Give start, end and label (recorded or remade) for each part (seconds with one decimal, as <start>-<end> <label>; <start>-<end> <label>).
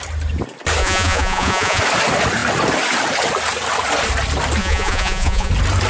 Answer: 0.0-0.8 recorded; 0.8-1.8 remade; 1.8-4.6 recorded; 4.6-5.5 remade; 5.5-5.9 recorded